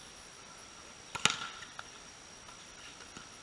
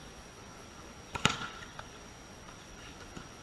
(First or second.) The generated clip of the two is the second